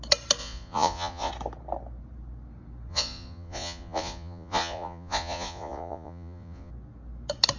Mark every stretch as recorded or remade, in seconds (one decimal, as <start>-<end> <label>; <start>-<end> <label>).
0.0-0.4 recorded; 0.4-1.3 remade; 1.3-2.9 recorded; 2.9-6.7 remade; 6.7-7.6 recorded